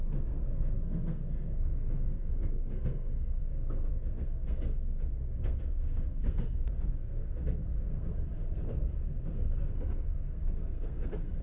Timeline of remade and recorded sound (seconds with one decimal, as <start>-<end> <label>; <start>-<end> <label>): 0.0-11.4 remade